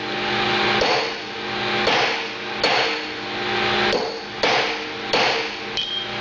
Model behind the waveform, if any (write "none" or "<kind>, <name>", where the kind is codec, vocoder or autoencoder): none